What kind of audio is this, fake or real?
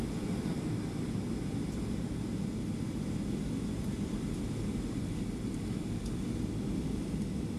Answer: real